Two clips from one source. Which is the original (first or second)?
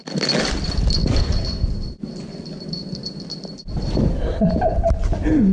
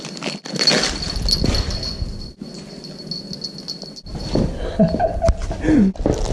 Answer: second